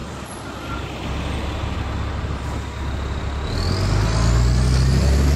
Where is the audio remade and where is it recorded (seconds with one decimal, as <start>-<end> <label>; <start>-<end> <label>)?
0.0-5.4 recorded